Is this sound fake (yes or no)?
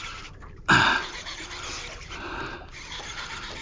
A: no